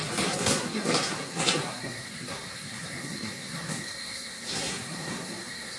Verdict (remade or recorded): remade